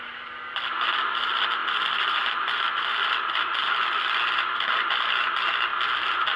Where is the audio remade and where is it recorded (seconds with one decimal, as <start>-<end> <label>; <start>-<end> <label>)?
0.0-1.6 recorded; 1.6-4.2 remade; 4.2-6.4 recorded